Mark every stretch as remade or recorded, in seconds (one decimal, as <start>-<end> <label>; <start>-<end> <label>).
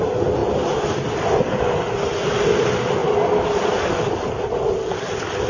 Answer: 0.0-5.5 recorded